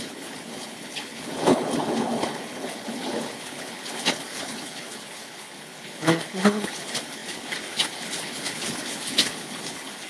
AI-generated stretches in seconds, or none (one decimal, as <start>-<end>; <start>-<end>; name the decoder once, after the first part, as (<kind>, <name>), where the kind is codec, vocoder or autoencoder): 0.0-10.1 (codec, HILCodec)